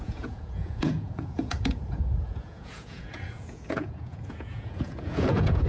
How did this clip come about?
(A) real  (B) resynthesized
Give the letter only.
B